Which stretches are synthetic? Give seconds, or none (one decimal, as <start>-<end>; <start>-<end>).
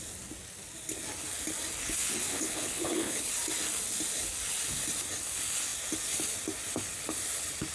2.3-3.3